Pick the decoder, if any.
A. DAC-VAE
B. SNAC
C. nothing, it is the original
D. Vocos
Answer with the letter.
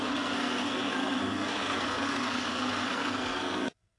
B